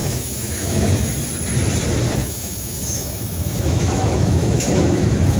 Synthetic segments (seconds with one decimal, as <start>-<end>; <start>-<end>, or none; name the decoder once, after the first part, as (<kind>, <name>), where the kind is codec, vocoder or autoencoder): 0.0-1.1 (autoencoder, DAC-VAE); 2.2-5.4